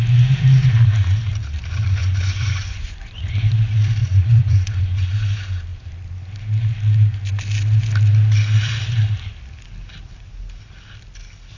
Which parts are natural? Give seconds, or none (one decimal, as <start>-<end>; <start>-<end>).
0.0-2.0; 3.3-4.0; 5.1-11.6